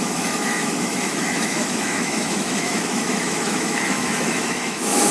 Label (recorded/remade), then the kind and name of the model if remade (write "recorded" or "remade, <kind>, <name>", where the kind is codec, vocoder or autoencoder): remade, autoencoder, DAC-VAE